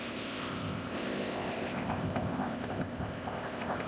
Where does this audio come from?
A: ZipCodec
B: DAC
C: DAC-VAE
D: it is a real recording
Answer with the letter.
A